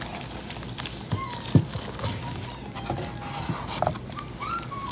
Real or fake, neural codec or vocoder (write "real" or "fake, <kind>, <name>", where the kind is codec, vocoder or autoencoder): real